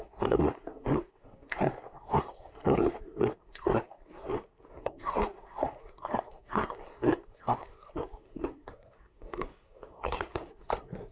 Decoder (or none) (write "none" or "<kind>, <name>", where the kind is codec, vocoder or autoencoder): codec, SNAC